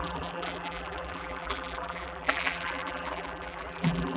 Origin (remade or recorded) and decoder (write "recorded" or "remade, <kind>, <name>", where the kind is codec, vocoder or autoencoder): remade, vocoder, BigVGAN v2